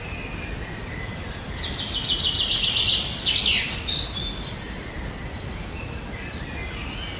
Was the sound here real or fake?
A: real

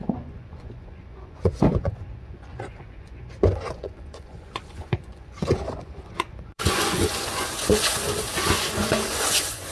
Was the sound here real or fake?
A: fake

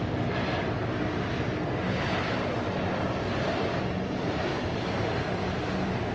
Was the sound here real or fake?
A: fake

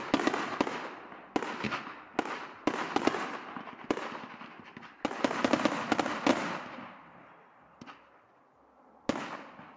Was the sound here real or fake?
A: real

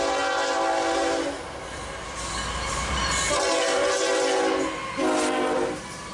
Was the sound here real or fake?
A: real